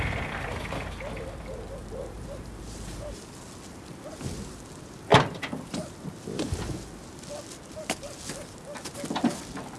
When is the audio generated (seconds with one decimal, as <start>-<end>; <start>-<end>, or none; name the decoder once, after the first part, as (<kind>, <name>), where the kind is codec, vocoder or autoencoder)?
1.8-3.2 (vocoder, BigVGAN v2)